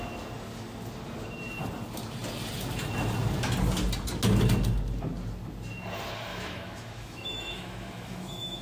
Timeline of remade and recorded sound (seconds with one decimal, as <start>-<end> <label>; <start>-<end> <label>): 0.0-6.3 recorded; 6.3-8.6 remade